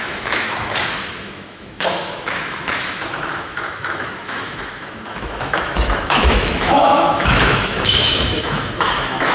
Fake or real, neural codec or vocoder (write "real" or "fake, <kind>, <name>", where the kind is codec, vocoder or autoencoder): fake, autoencoder, DAC-VAE